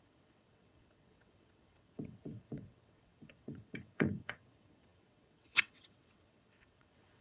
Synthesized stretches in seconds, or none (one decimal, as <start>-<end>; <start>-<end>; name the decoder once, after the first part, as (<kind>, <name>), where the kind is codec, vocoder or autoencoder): 0.0-7.2 (vocoder, WaveNeXt)